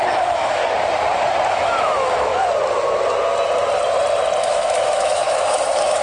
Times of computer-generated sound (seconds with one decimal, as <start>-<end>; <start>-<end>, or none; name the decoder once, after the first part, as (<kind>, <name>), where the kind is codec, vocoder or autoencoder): 0.0-0.6 (autoencoder, DAC-VAE); 1.5-2.3; 4.4-6.0